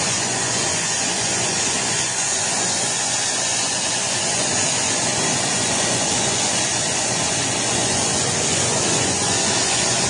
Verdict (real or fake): fake